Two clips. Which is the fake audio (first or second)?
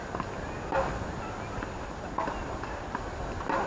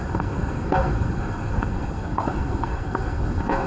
second